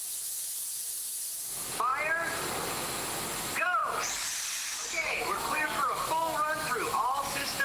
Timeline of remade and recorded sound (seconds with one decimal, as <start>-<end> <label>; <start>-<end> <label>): 0.0-1.9 remade; 1.9-3.4 recorded; 3.4-3.8 remade; 3.8-4.9 recorded; 4.9-7.6 remade